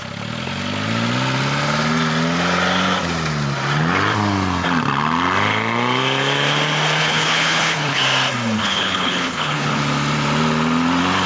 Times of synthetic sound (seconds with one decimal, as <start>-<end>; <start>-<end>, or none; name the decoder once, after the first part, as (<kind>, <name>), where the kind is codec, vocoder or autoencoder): 7.0-8.0 (codec, HILCodec); 8.6-9.8